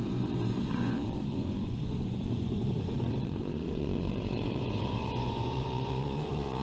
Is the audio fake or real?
fake